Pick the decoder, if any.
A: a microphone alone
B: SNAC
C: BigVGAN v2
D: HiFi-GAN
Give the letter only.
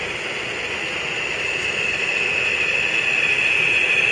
A